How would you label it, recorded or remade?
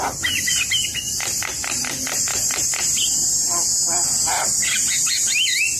recorded